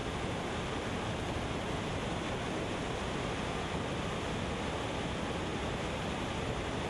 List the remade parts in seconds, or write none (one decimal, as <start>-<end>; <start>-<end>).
none